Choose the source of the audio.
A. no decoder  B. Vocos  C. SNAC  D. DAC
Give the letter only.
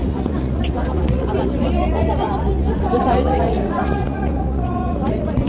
B